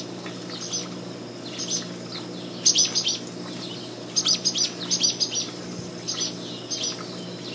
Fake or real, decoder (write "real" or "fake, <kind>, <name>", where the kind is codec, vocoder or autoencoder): real